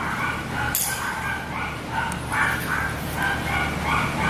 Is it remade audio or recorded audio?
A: recorded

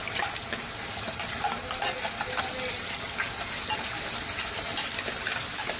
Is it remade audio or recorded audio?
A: recorded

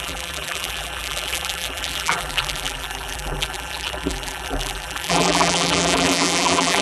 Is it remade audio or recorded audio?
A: remade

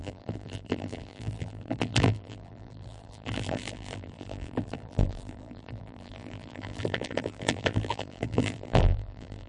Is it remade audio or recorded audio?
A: remade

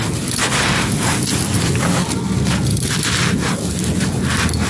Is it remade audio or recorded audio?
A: recorded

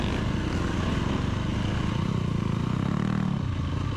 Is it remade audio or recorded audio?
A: recorded